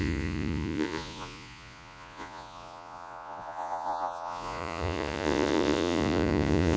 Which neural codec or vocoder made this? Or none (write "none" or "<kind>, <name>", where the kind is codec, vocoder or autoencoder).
vocoder, Vocos